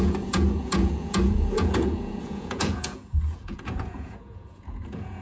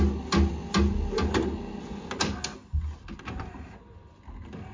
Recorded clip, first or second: second